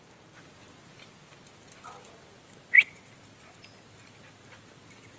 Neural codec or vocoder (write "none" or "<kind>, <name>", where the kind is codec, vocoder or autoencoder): none